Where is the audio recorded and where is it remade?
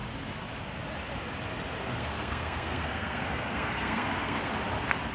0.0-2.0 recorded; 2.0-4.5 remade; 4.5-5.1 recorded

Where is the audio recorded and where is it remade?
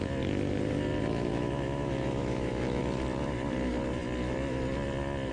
0.0-1.3 recorded; 1.3-2.8 remade; 2.8-5.3 recorded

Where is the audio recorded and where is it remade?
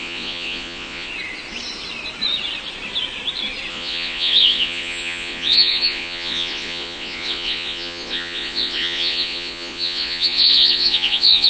0.0-1.1 remade; 1.1-3.7 recorded; 3.7-11.5 remade